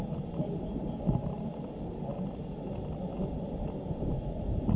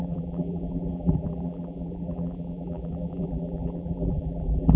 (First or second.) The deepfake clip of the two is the second